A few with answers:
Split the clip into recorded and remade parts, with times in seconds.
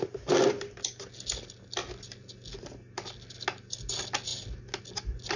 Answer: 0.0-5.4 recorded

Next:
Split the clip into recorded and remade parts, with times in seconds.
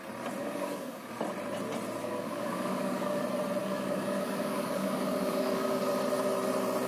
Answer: 0.0-0.4 recorded; 0.4-1.1 remade; 1.1-2.0 recorded; 2.0-3.2 remade; 3.2-3.6 recorded; 3.6-5.8 remade; 5.8-6.9 recorded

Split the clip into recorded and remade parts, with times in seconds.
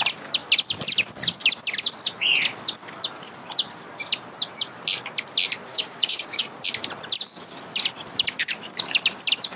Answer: 0.0-5.7 recorded; 5.7-6.5 remade; 6.5-9.6 recorded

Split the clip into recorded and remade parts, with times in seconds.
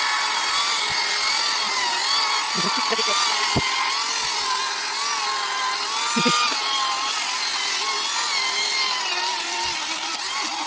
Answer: 0.0-10.7 recorded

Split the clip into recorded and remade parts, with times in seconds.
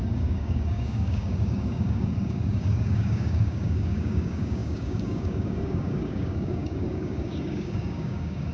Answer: 0.0-8.5 remade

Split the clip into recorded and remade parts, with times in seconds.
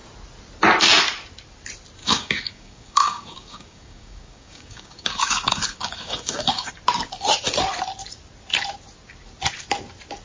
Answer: 0.0-2.0 recorded; 2.0-6.7 remade; 6.7-10.2 recorded